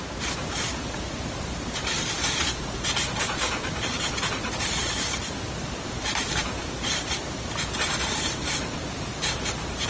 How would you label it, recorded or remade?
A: remade